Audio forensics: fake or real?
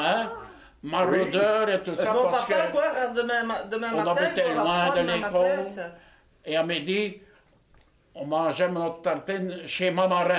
real